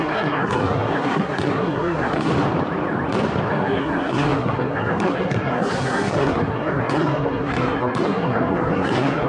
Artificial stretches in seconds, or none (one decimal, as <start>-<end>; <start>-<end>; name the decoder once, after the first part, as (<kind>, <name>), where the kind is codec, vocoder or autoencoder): 0.0-2.3 (codec, SNAC); 3.5-9.3